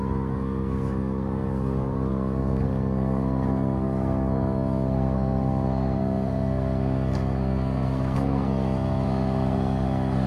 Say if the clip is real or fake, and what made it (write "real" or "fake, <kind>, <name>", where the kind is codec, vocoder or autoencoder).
fake, codec, SNAC